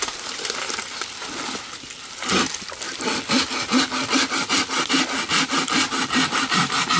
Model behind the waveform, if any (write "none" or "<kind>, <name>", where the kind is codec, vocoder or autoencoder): none